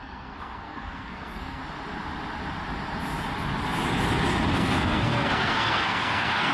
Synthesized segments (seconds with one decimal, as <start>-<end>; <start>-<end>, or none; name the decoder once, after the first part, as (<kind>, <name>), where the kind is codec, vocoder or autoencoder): 0.0-1.6 (codec, SNAC); 4.5-6.5